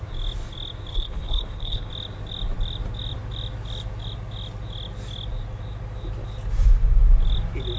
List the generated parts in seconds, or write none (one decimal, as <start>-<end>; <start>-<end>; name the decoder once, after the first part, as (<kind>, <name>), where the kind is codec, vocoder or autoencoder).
0.9-1.9 (codec, HILCodec)